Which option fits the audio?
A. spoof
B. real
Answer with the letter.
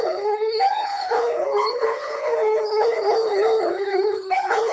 A